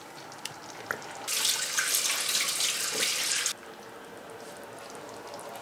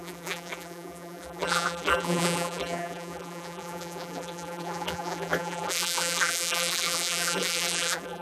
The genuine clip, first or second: first